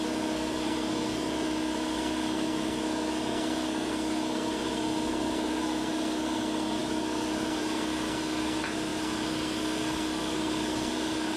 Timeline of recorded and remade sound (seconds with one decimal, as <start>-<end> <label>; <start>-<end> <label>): 0.0-11.4 remade